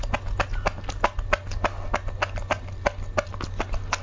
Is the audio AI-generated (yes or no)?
no